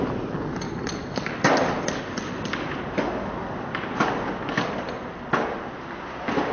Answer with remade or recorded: recorded